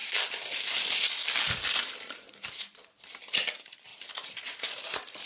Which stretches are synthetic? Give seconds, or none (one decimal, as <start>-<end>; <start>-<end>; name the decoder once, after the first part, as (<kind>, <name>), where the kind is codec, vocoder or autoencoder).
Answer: 0.0-3.2 (vocoder, BigVGAN v2); 3.9-5.3